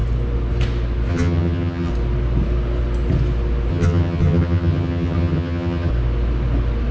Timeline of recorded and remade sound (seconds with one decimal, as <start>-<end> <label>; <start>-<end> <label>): 0.0-1.1 recorded; 1.1-1.9 remade; 1.9-3.7 recorded; 3.7-5.9 remade; 5.9-6.9 recorded